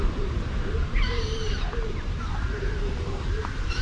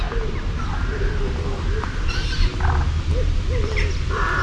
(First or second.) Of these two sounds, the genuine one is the second